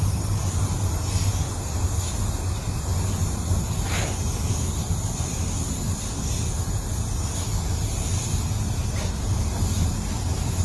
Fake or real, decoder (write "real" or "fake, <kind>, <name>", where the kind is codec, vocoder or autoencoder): real